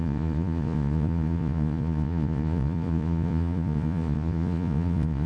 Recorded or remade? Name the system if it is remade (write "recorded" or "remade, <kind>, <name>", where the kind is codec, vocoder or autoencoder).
remade, vocoder, Vocos